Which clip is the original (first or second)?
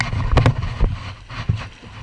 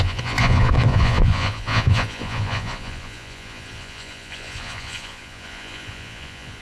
first